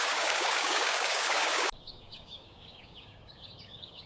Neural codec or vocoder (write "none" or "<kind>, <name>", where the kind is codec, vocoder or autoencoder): codec, DAC